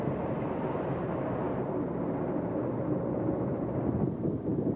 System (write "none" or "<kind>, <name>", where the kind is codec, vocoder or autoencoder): none